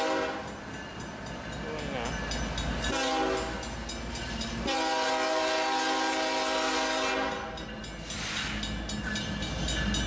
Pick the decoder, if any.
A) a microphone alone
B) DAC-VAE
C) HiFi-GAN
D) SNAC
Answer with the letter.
A